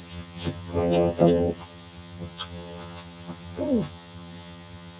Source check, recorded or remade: remade